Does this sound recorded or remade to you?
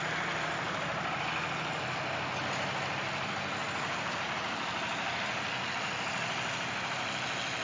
recorded